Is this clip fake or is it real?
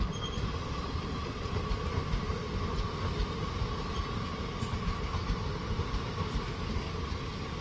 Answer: real